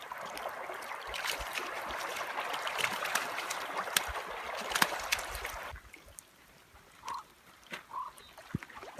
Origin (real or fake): real